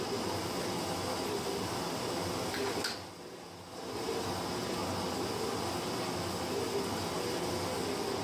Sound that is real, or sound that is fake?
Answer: real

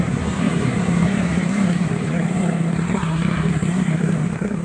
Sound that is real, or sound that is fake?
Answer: fake